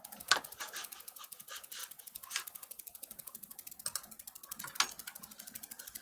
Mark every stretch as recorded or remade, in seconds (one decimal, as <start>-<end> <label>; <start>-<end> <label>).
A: 0.0-6.0 recorded